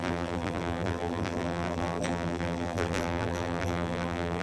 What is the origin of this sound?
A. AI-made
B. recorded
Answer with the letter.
A